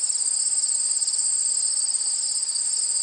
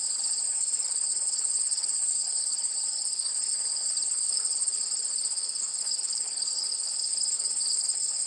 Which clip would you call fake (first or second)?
second